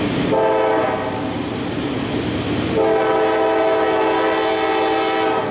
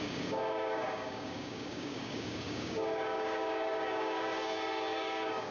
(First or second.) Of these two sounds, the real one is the first